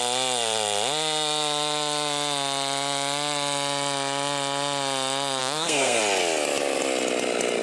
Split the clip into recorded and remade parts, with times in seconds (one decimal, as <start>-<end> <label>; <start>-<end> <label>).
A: 0.0-5.4 recorded; 5.4-6.0 remade; 6.0-7.6 recorded